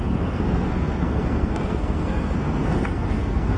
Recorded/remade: remade